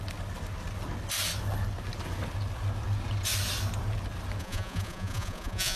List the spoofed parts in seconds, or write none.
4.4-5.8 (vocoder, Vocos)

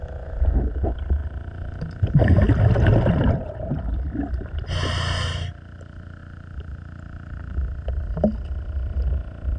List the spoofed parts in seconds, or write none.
none

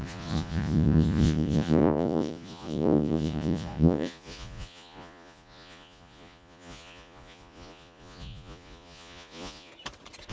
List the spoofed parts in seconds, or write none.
0.0-9.7 (vocoder, Vocos)

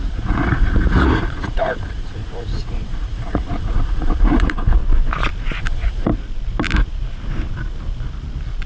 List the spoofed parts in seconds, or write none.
0.0-4.8 (vocoder, Vocos); 5.6-6.1

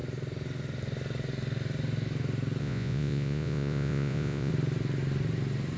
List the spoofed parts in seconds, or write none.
2.6-4.5 (vocoder, Vocos)

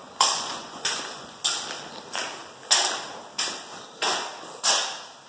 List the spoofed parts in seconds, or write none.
0.0-1.4 (vocoder, Vocos)

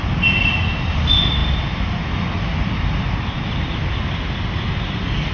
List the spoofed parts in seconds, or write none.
none

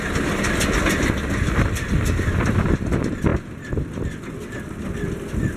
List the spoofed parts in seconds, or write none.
none